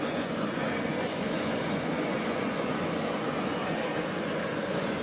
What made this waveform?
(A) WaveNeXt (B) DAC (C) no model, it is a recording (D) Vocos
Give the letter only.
D